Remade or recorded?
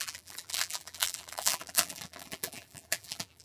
remade